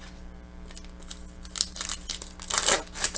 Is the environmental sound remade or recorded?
recorded